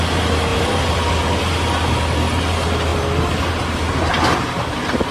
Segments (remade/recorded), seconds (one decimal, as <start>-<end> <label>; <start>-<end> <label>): 0.0-0.5 recorded; 0.5-1.1 remade; 1.1-5.1 recorded